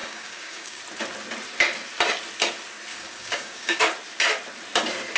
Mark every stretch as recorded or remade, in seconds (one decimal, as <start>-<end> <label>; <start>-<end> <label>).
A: 0.0-0.8 remade; 0.8-2.9 recorded; 2.9-3.8 remade; 3.8-5.2 recorded